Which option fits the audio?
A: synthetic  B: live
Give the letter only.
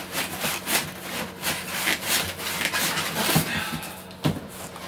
B